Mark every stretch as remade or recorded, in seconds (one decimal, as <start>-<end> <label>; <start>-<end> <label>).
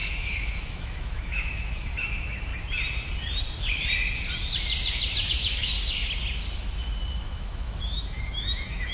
0.0-2.5 remade; 2.5-5.3 recorded; 5.3-5.7 remade; 5.7-7.2 recorded; 7.2-8.9 remade